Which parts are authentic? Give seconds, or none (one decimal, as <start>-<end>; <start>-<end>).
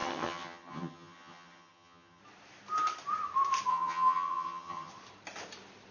2.2-3.7; 4.9-5.9